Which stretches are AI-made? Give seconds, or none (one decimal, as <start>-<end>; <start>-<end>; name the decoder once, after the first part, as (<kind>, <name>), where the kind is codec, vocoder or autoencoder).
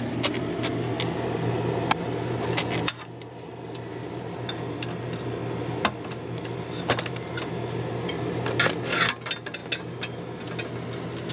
none